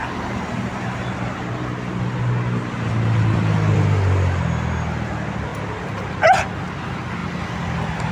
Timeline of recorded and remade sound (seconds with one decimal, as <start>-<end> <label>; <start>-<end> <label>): 0.0-8.1 recorded